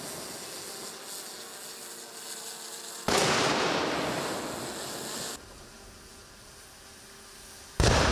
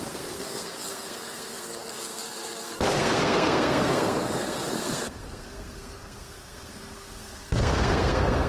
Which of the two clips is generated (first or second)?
second